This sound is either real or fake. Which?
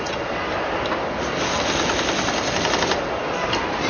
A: real